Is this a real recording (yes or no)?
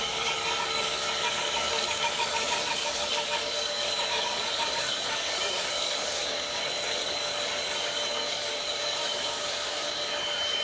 no